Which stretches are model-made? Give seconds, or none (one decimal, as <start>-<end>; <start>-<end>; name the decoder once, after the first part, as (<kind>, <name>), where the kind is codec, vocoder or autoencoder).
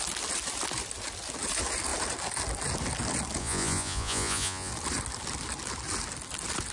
3.4-4.7 (vocoder, Vocos)